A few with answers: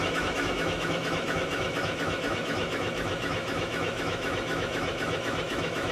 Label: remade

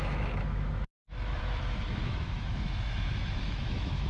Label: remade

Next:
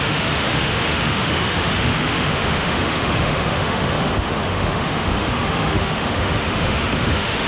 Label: remade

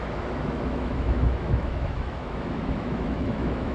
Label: remade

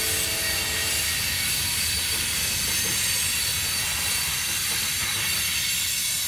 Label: recorded